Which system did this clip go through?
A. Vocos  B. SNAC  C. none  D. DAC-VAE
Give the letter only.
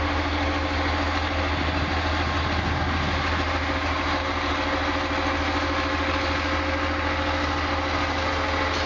C